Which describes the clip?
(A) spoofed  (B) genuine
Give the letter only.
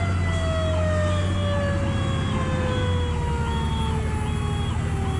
B